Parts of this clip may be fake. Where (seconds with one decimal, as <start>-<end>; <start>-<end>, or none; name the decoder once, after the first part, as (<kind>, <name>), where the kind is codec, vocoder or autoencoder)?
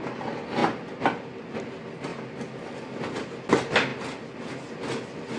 none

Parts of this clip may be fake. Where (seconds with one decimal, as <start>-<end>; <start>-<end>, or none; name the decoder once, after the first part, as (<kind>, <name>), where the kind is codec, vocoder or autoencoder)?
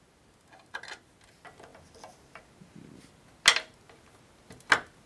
none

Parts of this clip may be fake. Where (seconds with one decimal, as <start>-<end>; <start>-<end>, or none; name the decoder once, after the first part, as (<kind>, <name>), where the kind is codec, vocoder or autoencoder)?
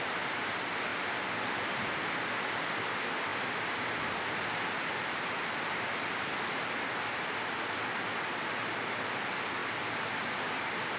none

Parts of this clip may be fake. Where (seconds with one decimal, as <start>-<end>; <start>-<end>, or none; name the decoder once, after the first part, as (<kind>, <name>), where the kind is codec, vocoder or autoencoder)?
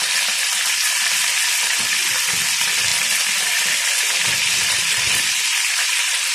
4.4-6.3 (vocoder, BigVGAN v2)